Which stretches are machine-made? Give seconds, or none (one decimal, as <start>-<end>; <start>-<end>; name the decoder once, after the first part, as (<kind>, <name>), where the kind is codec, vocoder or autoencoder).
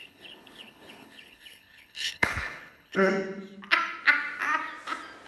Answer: 0.0-3.1 (codec, HILCodec)